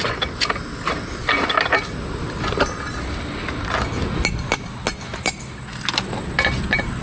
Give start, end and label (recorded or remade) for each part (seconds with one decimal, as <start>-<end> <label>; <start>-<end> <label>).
0.0-5.1 recorded; 5.1-7.0 remade